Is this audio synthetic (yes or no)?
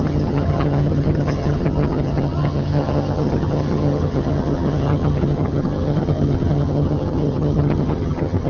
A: yes